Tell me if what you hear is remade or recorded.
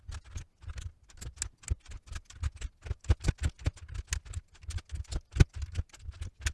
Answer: recorded